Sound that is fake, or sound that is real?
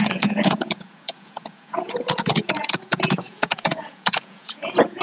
fake